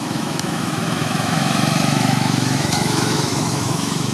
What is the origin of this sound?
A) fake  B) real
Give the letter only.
A